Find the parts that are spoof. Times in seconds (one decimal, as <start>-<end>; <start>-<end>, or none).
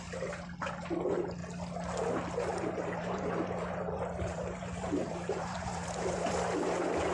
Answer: 2.5-6.3